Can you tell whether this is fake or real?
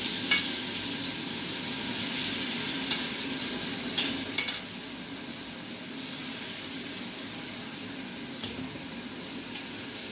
real